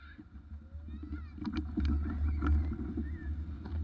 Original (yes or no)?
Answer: yes